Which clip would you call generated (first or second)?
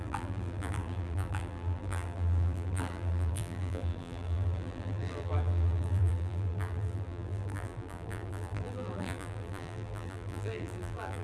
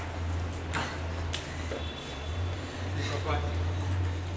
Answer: first